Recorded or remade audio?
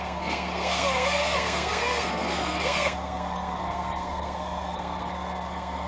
remade